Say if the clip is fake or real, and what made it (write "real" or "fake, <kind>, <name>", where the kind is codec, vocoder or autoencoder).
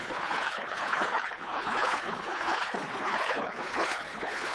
fake, codec, HILCodec